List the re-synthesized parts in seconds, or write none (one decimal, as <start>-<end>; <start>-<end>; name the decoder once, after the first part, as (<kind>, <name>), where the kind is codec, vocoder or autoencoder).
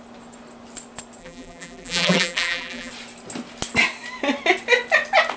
1.2-2.9 (vocoder, BigVGAN v2)